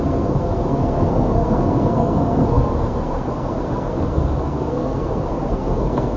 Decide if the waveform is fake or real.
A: fake